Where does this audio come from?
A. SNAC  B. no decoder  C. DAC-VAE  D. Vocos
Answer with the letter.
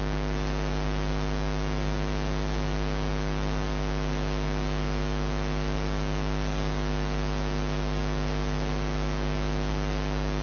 B